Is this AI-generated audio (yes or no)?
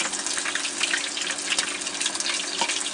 no